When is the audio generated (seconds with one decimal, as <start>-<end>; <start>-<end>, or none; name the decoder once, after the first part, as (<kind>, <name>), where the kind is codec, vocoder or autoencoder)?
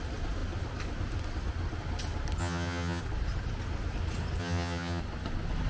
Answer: 2.4-3.0 (vocoder, HiFi-GAN); 4.4-5.0